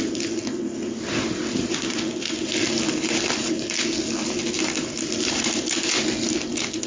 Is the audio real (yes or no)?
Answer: yes